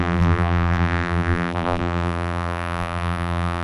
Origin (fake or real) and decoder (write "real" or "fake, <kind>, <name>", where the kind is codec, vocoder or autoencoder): fake, vocoder, BigVGAN v2